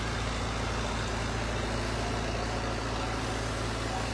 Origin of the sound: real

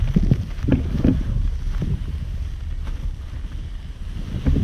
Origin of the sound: real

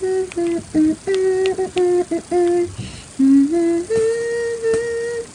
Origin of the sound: real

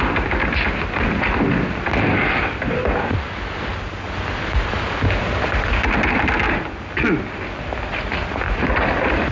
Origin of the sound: real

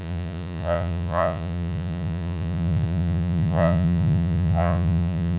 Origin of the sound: fake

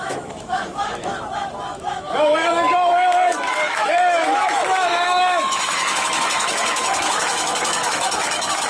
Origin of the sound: fake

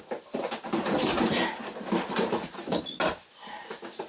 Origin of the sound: real